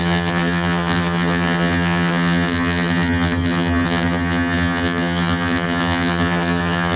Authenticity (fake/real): fake